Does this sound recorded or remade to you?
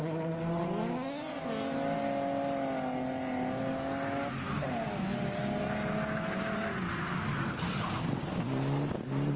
recorded